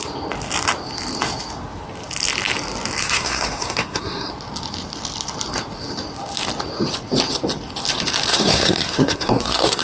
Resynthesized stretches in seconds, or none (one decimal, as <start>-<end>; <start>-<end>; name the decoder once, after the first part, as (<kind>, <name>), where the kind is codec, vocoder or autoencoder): 3.0-4.3 (codec, SNAC); 8.3-9.8